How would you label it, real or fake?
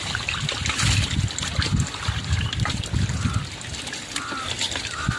real